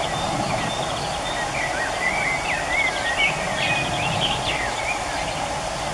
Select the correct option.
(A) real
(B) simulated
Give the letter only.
A